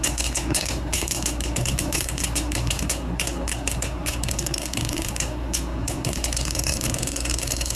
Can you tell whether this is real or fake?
fake